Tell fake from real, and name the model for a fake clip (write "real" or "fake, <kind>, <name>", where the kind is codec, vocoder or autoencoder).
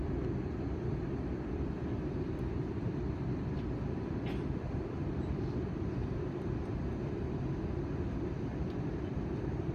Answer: fake, vocoder, BigVGAN v2